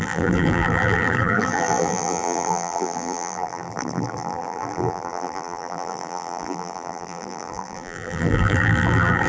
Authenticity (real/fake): fake